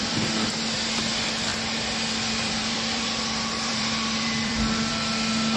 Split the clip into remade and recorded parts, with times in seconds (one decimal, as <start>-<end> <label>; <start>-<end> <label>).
0.0-1.5 recorded; 1.5-4.9 remade; 4.9-5.6 recorded